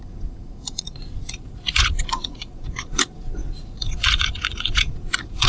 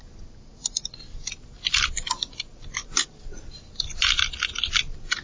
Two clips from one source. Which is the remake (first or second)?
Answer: first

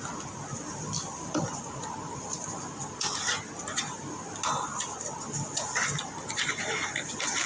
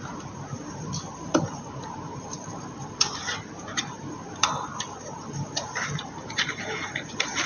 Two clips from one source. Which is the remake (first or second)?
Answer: second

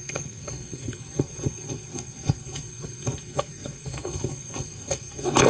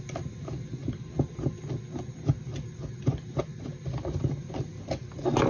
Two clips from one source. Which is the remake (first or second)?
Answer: first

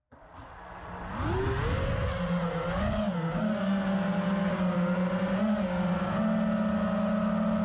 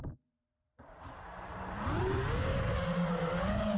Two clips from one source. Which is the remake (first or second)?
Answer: second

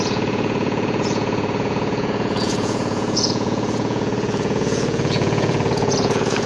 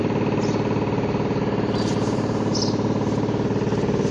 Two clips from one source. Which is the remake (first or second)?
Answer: first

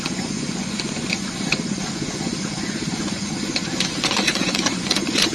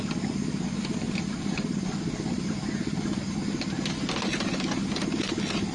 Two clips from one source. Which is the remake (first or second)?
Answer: first